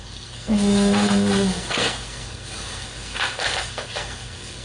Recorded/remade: remade